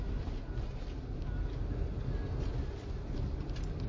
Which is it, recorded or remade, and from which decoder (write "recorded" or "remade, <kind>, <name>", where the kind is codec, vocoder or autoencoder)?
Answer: recorded